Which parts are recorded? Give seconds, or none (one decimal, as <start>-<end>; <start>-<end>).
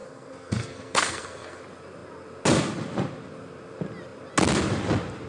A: 1.6-5.3